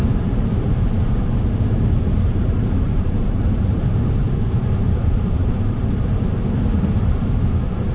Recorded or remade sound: remade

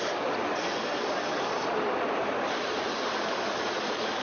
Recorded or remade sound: recorded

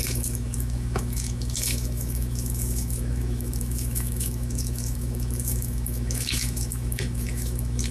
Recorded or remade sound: remade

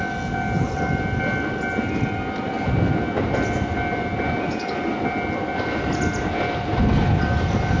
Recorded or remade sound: recorded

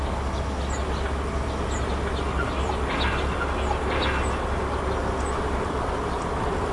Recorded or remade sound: recorded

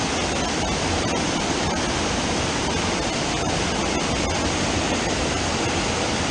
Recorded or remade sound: recorded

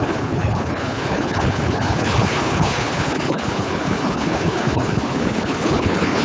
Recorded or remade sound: remade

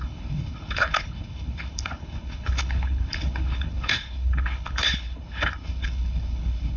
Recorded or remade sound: remade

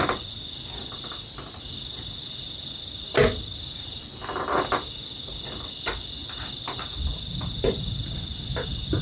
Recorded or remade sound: recorded